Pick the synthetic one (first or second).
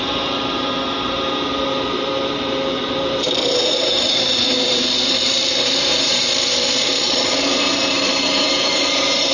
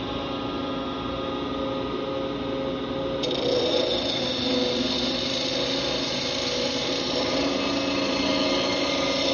first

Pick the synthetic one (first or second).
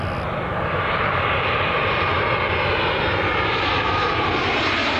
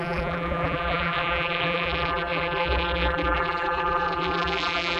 second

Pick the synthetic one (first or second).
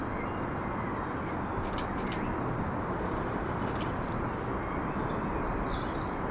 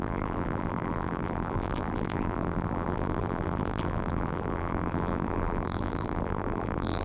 second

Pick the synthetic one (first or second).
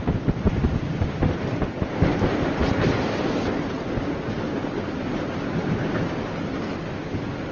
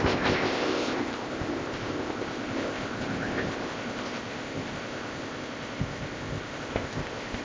second